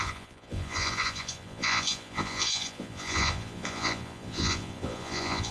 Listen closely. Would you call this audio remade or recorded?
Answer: remade